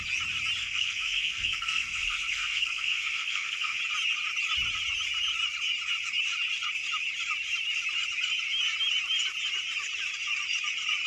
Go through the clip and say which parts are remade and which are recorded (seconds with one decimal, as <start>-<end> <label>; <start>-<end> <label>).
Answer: 0.0-0.6 recorded; 0.6-3.8 remade; 3.8-11.1 recorded